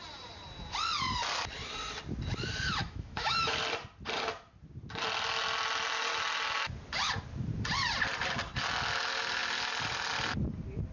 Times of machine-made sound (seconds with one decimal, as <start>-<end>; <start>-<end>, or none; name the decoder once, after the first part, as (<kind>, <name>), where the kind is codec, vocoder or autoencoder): 2.8-3.6 (autoencoder, DAC-VAE)